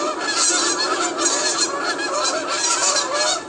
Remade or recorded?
recorded